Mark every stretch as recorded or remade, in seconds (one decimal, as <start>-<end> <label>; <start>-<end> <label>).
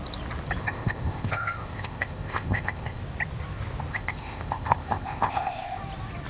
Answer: 0.0-0.6 recorded; 0.6-3.0 remade; 3.0-3.9 recorded; 3.9-5.8 remade; 5.8-6.3 recorded